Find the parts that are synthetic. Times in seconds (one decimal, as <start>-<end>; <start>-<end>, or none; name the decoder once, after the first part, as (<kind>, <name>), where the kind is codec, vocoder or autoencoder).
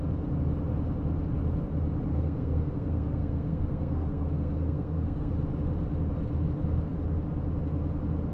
2.1-5.3 (codec, SNAC)